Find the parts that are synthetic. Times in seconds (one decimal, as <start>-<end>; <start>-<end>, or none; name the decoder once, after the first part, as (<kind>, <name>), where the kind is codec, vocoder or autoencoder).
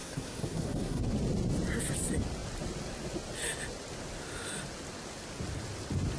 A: 0.0-1.0 (codec, SNAC)